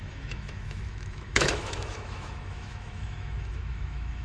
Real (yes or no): no